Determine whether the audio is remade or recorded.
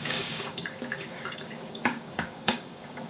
remade